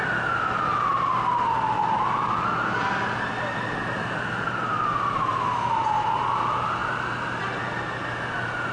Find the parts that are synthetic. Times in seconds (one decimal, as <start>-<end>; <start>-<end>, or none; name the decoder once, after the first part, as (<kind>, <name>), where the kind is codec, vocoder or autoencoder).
none